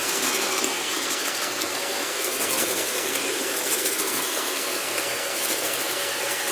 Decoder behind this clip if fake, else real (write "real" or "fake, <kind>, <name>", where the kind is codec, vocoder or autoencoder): fake, codec, SNAC